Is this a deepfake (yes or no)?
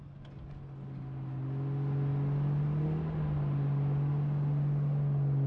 no